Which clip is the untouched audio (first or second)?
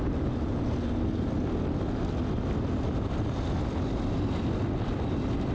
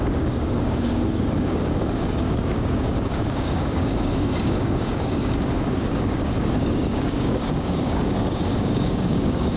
first